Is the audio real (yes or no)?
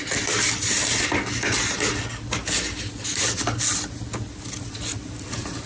yes